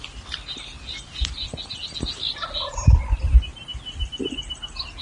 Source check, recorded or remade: recorded